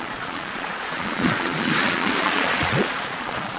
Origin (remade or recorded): remade